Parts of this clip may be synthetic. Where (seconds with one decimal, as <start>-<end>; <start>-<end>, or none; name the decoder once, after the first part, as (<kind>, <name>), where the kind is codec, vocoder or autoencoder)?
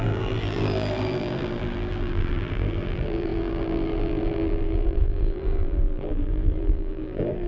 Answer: 0.0-7.5 (vocoder, BigVGAN v2)